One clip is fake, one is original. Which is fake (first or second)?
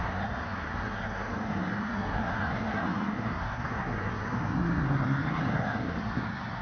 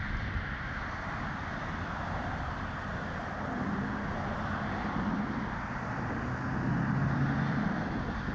first